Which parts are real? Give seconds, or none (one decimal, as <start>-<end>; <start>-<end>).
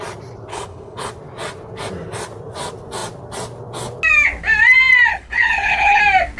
0.0-0.5; 1.1-5.1; 6.0-6.4